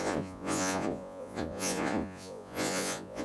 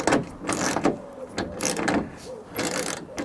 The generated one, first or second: first